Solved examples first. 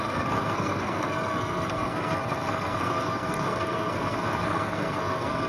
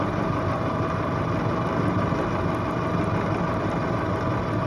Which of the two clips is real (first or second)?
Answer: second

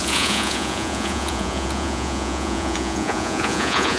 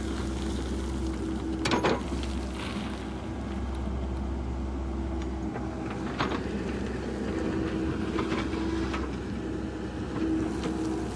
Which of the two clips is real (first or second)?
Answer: second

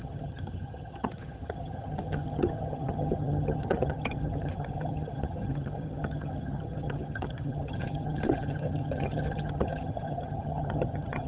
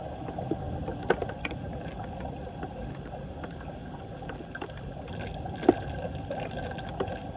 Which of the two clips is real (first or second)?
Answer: second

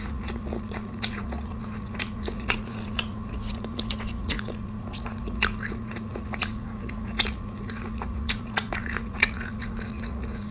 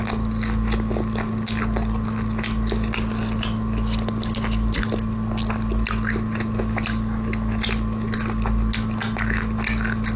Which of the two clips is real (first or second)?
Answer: second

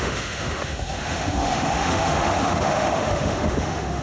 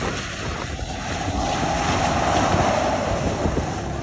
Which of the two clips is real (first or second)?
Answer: second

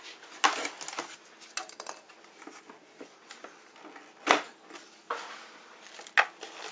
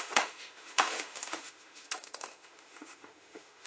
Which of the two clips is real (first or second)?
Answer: first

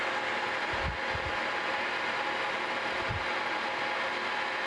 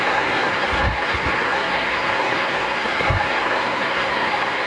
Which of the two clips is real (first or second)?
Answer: first